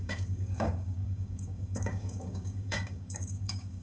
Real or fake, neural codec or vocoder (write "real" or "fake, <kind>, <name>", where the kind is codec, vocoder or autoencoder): fake, codec, DAC